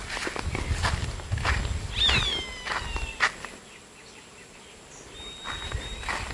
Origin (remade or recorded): recorded